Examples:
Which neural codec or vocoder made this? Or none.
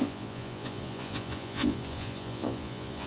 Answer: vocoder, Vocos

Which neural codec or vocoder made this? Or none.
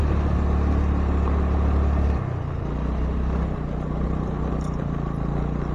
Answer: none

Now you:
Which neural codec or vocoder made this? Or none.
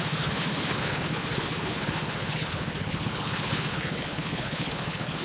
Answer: codec, HILCodec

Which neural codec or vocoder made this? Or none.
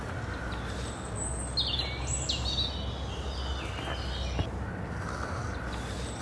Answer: none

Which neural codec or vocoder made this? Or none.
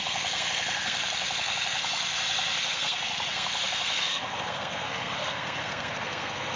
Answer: codec, SNAC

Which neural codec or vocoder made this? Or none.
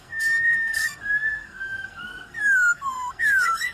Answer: codec, SNAC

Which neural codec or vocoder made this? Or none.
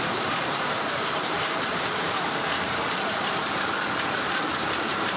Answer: vocoder, BigVGAN v2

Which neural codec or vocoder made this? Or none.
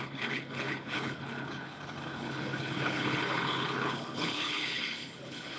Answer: codec, HILCodec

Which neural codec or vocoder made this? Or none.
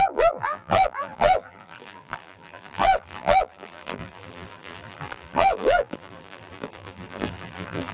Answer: vocoder, BigVGAN v2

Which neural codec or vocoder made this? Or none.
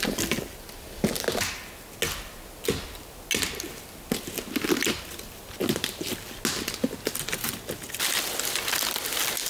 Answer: none